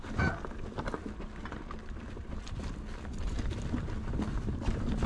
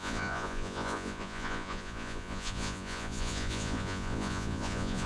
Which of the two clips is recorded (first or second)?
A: first